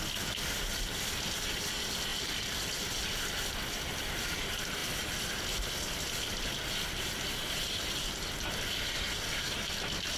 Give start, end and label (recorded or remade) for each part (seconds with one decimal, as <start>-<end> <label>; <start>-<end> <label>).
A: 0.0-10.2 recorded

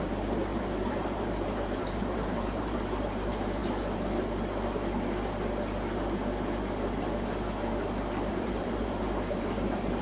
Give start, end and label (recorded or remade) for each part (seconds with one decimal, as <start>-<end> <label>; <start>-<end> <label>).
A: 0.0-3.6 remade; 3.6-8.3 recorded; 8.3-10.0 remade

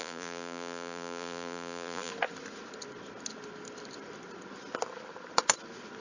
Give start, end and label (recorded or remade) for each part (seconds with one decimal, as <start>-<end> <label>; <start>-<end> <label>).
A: 0.0-2.1 remade; 2.1-6.0 recorded

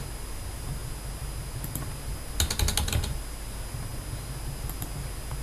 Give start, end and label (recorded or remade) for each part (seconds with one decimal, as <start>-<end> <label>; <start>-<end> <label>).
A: 0.0-5.4 recorded

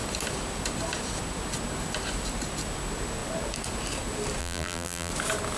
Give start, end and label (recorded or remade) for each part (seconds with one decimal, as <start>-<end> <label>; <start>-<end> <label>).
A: 0.0-4.4 recorded; 4.4-5.1 remade; 5.1-5.6 recorded

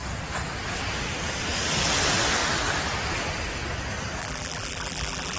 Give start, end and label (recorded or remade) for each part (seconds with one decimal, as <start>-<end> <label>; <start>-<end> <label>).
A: 0.0-4.2 recorded; 4.2-5.4 remade

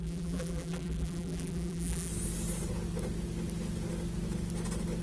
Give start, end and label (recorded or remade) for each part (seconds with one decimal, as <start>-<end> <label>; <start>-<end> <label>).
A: 0.0-2.1 remade; 2.1-5.0 recorded

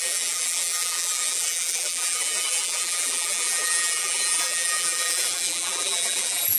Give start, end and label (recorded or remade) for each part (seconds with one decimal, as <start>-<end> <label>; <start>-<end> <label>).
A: 0.0-6.6 remade